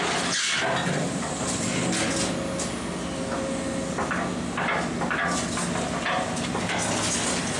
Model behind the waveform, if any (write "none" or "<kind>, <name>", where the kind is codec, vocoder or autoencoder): none